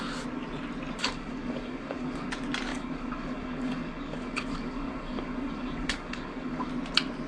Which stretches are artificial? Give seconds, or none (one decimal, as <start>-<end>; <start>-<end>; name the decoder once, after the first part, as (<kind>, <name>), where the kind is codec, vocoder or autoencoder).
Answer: 1.0-2.3 (codec, DAC); 2.7-6.7